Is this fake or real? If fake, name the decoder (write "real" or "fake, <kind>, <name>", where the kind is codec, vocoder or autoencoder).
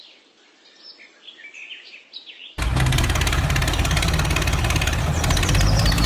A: real